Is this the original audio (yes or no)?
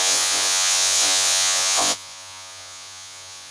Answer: no